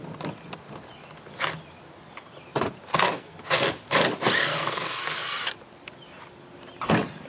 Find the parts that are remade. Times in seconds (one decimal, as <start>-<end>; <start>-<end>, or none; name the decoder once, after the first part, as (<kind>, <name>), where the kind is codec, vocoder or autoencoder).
2.9-3.6 (codec, SNAC); 4.4-5.4

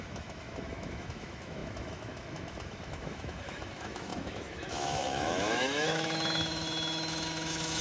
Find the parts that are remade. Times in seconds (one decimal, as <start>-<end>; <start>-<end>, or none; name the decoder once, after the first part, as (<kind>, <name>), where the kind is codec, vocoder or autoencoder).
0.0-7.8 (autoencoder, DAC-VAE)

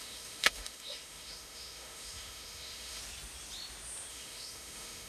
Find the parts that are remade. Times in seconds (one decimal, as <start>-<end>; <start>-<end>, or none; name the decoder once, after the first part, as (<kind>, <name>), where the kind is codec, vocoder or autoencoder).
0.0-3.0 (autoencoder, DAC-VAE); 4.1-5.1

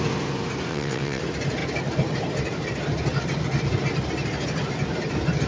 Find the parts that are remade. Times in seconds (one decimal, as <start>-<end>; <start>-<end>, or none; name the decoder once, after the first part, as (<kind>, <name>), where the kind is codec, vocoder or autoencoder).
0.7-1.2 (vocoder, WaveNeXt)

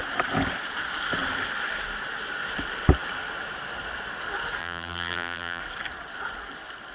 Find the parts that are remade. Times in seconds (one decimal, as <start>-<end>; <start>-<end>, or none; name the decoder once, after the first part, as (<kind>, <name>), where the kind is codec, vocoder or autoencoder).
4.6-5.6 (vocoder, BigVGAN v2)

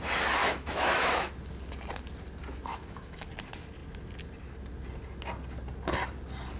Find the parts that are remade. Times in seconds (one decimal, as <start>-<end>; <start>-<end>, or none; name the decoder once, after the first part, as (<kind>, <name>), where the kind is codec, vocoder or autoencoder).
0.4-1.3 (autoencoder, DAC-VAE); 2.7-3.3